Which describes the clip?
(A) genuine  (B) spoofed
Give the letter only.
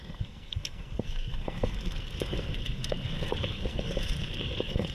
B